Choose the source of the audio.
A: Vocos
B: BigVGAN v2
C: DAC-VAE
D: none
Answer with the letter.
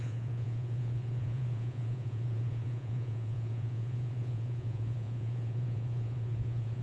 A